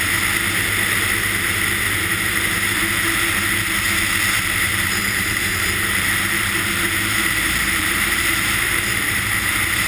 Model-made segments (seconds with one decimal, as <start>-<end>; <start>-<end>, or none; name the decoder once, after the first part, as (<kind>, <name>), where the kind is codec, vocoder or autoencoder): 4.7-9.5 (vocoder, BigVGAN v2)